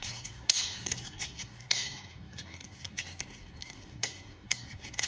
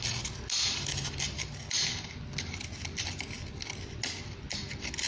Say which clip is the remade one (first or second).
first